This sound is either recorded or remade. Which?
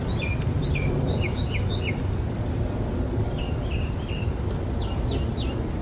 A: recorded